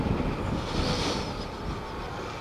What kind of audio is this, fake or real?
real